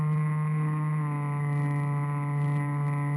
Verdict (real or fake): real